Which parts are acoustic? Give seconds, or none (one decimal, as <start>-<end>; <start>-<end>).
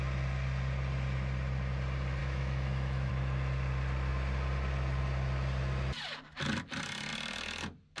0.0-2.2; 3.1-8.0